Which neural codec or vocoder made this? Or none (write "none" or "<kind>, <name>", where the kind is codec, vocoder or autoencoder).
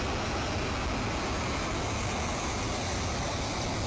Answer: none